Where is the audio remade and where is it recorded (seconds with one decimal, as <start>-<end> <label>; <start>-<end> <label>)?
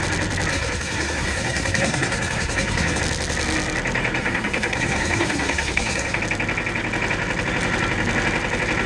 0.0-0.5 recorded; 0.5-3.0 remade; 3.0-4.2 recorded; 4.2-6.2 remade; 6.2-8.9 recorded